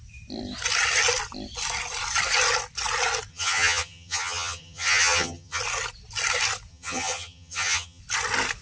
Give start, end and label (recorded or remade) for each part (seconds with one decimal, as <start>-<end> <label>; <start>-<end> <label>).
0.0-3.3 recorded; 3.3-5.6 remade; 5.6-6.7 recorded; 6.7-8.0 remade; 8.0-8.6 recorded